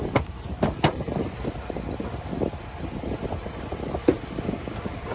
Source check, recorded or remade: recorded